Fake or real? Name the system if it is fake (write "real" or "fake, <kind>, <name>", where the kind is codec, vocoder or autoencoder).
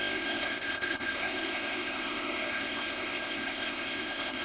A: fake, codec, ZipCodec